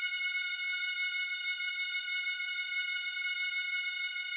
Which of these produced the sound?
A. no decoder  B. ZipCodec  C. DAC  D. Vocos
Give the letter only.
B